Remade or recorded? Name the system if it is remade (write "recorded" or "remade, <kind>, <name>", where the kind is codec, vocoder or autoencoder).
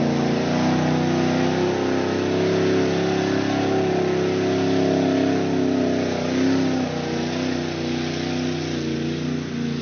recorded